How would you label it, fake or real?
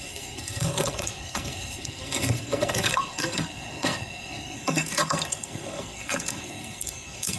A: fake